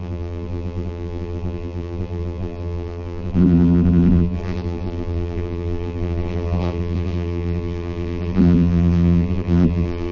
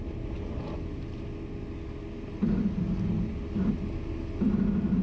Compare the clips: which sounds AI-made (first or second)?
first